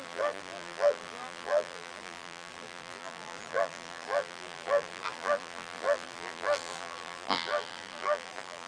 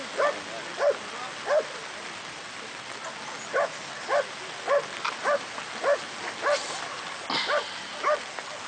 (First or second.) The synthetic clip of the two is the first